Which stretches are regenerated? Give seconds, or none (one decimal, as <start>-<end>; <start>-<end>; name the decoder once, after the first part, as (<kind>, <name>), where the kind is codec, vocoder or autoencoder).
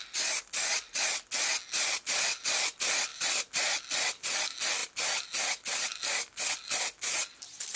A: 3.1-3.8 (vocoder, BigVGAN v2)